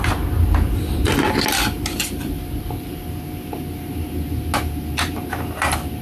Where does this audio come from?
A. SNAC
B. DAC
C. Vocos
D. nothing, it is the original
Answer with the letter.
D